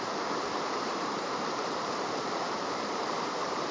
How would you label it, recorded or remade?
remade